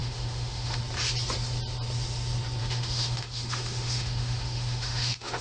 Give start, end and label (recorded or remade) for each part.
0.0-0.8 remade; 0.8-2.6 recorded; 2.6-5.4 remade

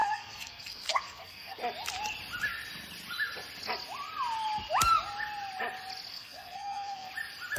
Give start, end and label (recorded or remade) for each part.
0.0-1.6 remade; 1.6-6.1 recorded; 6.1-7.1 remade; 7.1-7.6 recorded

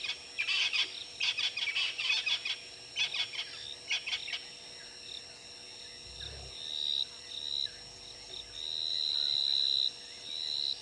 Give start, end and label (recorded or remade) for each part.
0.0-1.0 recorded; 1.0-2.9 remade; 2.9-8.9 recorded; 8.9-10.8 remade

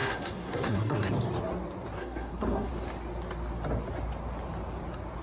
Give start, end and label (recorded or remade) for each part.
0.0-1.1 remade; 1.1-2.0 recorded; 2.0-2.7 remade; 2.7-5.2 recorded

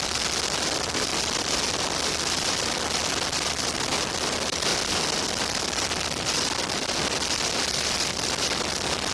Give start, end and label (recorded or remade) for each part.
0.0-9.1 recorded

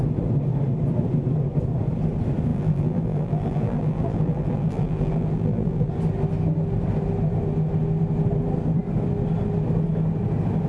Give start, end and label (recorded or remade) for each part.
0.0-2.5 recorded; 2.5-5.9 remade; 5.9-10.7 recorded

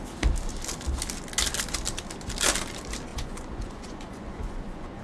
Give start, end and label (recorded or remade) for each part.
0.0-3.1 recorded; 3.1-5.0 remade

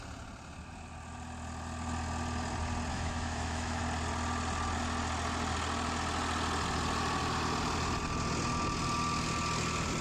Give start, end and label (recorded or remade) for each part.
0.0-2.9 recorded; 2.9-3.8 remade; 3.8-10.0 recorded